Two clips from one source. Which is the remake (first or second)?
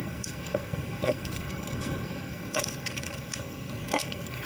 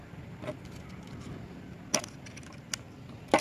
first